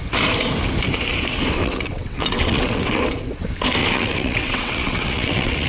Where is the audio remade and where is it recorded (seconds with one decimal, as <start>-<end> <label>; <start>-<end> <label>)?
0.0-1.6 recorded; 1.6-3.0 remade; 3.0-3.8 recorded; 3.8-5.7 remade